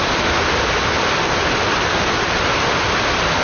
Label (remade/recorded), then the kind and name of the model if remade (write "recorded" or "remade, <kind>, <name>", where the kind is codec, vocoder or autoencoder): recorded